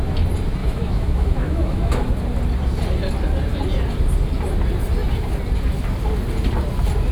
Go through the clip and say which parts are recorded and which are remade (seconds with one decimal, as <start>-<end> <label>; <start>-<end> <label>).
0.0-0.6 recorded; 0.6-2.1 remade; 2.1-7.1 recorded